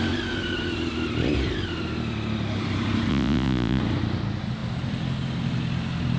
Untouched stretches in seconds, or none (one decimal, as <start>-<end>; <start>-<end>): 0.0-3.1; 3.8-6.2